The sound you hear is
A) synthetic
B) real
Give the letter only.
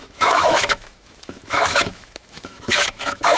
A